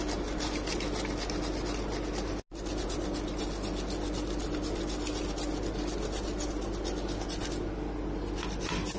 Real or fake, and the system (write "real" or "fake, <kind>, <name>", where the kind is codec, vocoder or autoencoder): real